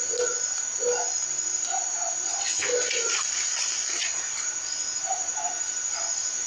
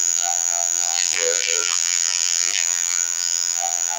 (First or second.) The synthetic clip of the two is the second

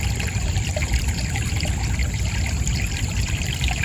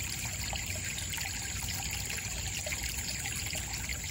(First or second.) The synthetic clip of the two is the first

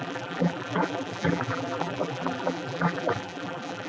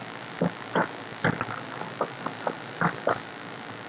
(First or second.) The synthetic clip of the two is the first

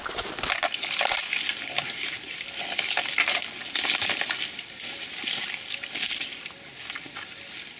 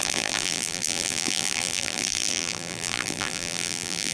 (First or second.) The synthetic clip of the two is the second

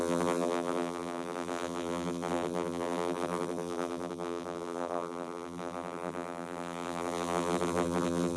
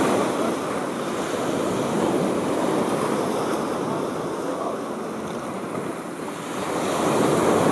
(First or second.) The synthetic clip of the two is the first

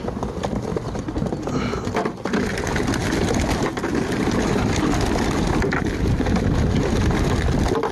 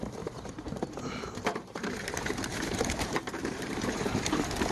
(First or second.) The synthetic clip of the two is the second